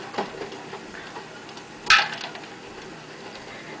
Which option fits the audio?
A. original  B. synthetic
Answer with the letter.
A